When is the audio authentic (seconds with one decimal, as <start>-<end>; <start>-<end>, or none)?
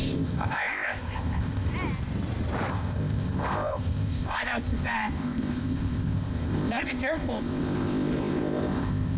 1.7-2.7